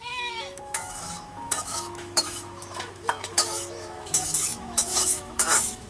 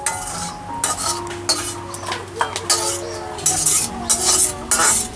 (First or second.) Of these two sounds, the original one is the second